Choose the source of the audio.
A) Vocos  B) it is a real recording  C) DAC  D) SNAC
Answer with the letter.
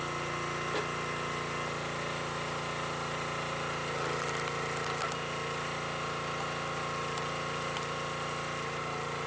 B